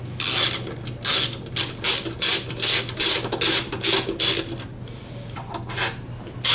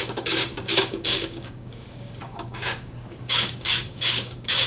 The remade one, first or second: second